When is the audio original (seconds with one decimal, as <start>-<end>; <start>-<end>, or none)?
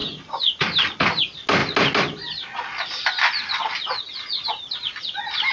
0.0-5.5